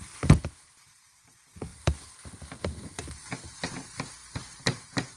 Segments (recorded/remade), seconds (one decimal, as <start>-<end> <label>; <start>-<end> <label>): 0.0-5.2 recorded